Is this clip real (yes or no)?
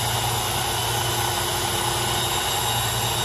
yes